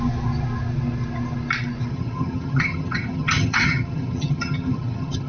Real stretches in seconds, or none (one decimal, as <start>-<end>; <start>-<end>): 0.0-1.9